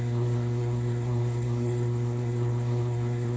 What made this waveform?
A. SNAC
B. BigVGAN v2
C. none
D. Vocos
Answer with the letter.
A